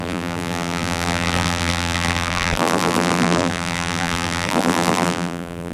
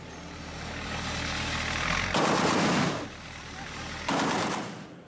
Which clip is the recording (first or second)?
second